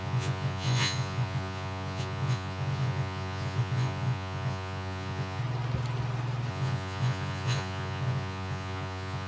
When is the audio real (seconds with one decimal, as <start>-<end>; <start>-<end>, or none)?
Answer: 5.4-6.5